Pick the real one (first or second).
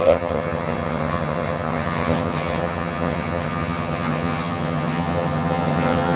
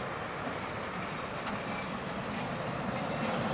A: second